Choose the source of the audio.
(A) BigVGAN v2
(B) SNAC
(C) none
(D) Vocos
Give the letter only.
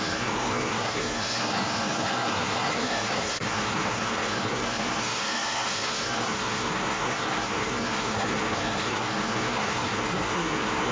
B